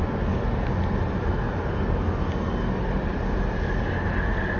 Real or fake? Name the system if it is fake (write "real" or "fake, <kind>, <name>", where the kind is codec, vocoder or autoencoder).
real